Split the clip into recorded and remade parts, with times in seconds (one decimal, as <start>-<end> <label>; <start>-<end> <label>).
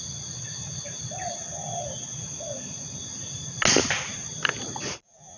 0.0-5.4 recorded